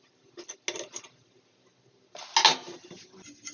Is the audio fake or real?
real